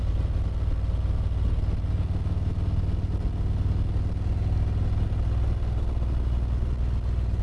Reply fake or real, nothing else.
real